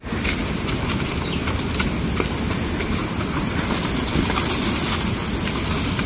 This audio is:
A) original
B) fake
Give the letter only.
A